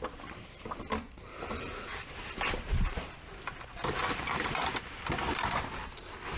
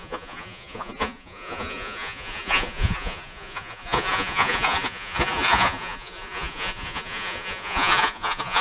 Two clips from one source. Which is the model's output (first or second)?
second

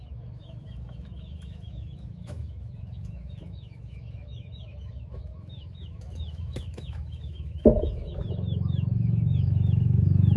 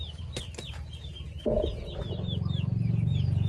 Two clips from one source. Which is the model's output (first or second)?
first